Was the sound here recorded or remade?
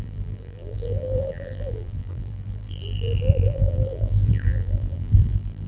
remade